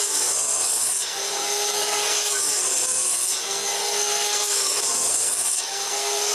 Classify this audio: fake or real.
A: fake